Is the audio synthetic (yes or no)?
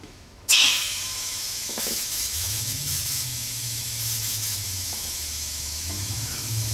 yes